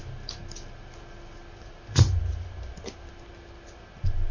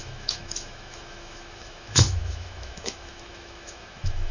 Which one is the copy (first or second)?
second